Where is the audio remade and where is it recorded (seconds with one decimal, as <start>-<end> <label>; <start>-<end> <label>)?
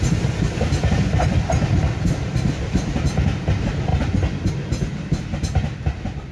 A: 0.0-6.3 recorded